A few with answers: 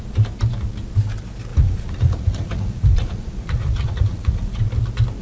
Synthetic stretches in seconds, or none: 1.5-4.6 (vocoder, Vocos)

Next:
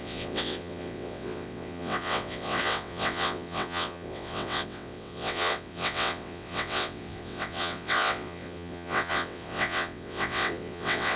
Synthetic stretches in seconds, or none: 0.0-11.2 (vocoder, WaveNeXt)

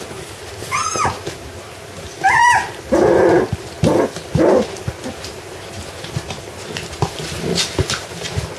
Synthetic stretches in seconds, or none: none

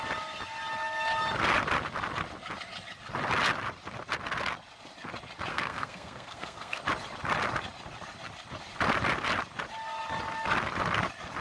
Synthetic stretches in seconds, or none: 5.5-6.8 (codec, SNAC)

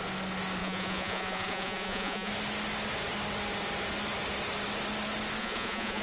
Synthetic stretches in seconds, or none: 0.6-2.3 (vocoder, Vocos); 5.4-6.0